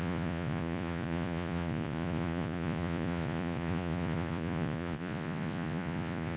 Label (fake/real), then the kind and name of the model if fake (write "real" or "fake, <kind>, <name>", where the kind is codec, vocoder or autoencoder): fake, vocoder, Vocos